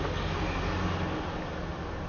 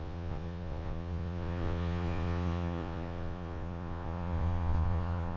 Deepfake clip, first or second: second